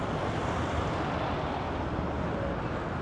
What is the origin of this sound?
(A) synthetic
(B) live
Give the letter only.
B